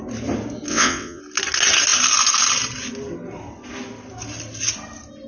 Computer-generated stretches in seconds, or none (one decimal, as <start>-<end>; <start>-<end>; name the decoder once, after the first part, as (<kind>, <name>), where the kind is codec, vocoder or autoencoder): 0.7-1.2 (vocoder, WaveNeXt)